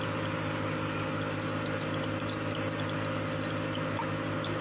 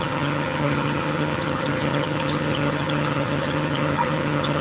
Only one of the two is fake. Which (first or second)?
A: second